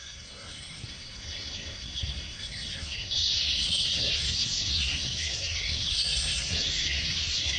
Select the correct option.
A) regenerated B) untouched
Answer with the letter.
A